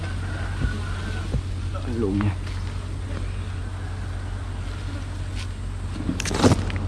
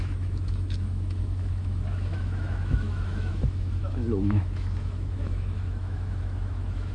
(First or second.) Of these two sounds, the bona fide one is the first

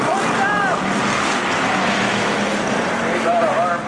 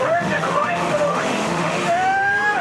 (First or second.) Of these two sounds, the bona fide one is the first